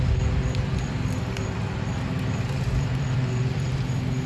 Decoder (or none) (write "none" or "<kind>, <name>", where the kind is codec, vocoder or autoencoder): vocoder, BigVGAN v2